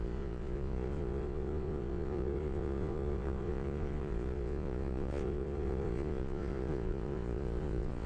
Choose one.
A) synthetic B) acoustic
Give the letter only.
A